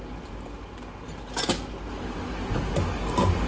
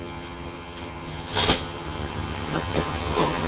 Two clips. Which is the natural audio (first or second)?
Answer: first